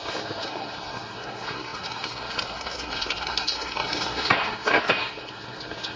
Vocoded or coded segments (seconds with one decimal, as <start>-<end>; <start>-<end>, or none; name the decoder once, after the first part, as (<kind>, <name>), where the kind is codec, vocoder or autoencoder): 0.0-6.0 (codec, SNAC)

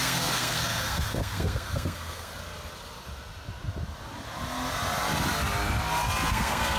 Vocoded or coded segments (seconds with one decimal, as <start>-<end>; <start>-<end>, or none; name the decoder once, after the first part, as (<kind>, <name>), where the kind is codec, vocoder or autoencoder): 0.0-2.3 (codec, SNAC); 6.3-6.8